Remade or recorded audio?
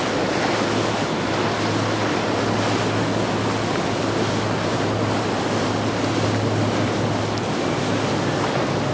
recorded